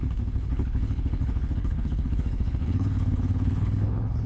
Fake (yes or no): yes